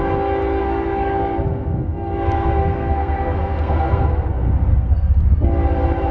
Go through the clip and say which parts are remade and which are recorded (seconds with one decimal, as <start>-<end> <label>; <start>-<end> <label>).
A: 0.0-0.6 recorded; 0.6-4.3 remade; 4.3-4.7 recorded; 4.7-5.2 remade; 5.2-6.1 recorded